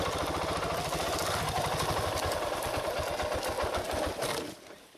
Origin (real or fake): real